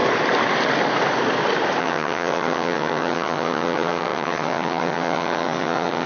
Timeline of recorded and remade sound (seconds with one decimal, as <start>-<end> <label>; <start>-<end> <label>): 0.0-1.8 recorded; 1.8-6.1 remade